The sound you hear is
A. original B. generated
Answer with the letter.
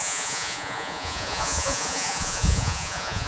B